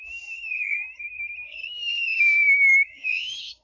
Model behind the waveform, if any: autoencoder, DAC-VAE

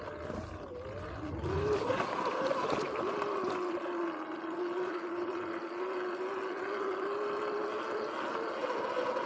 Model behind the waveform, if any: none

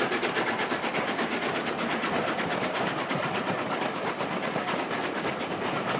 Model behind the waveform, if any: none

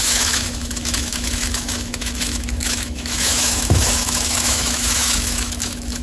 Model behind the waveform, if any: autoencoder, DAC-VAE